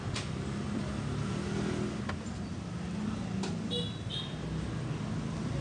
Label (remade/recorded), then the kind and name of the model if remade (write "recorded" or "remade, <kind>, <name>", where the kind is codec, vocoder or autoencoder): recorded